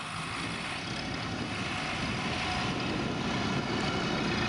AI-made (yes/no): no